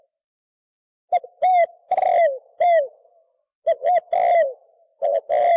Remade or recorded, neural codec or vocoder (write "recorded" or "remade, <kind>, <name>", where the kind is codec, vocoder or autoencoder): recorded